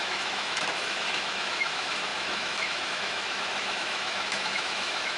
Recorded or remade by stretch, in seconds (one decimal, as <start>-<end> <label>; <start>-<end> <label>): 0.0-5.2 remade